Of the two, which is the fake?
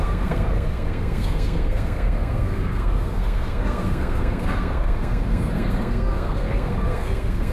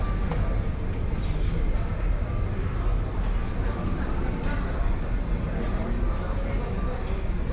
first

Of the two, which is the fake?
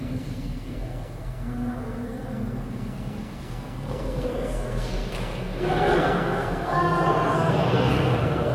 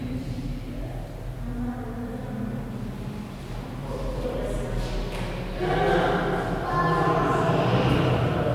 first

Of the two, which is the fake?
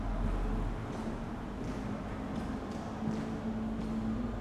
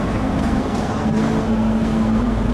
second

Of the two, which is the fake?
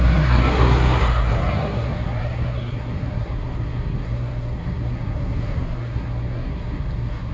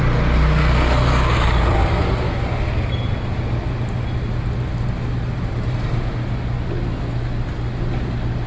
first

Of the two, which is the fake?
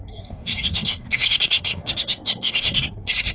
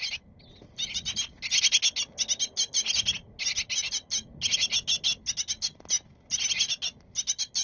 first